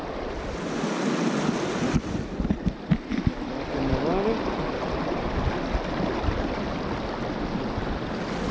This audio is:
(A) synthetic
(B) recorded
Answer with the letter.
B